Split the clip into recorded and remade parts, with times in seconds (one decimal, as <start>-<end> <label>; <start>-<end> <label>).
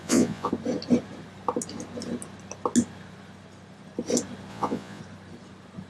0.0-0.5 remade; 0.5-4.5 recorded; 4.5-5.0 remade; 5.0-5.9 recorded